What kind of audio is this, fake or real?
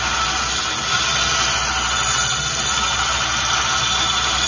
real